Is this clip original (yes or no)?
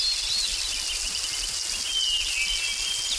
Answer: yes